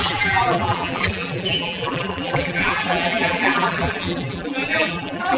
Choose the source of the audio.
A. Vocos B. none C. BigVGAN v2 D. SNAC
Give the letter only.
C